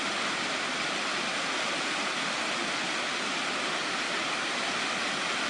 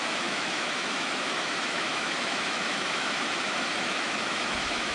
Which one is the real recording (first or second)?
first